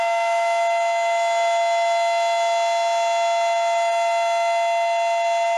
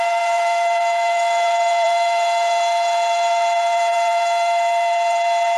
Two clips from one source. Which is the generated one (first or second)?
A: second